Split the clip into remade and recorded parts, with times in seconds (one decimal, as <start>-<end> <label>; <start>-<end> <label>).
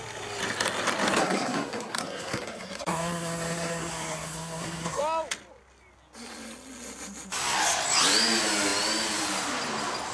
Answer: 0.0-1.2 recorded; 1.2-5.0 remade; 5.0-10.1 recorded